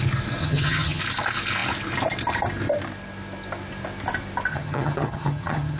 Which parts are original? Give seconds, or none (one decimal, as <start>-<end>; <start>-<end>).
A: 0.0-0.4; 1.0-4.5